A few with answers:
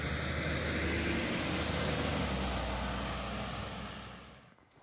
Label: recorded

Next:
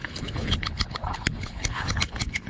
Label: remade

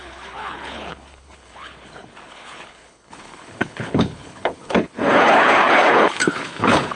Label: remade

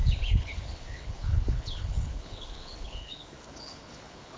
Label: remade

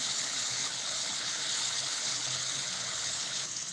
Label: remade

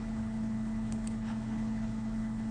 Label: remade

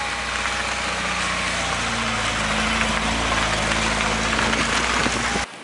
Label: recorded